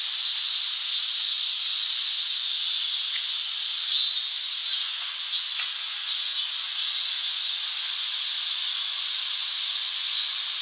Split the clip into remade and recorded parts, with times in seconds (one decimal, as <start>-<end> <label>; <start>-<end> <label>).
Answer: 0.0-2.0 recorded; 2.0-2.8 remade; 2.8-4.6 recorded; 4.6-7.9 remade; 7.9-10.6 recorded